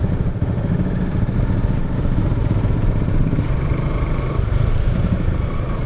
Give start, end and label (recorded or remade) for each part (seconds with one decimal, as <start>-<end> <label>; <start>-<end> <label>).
0.0-5.9 remade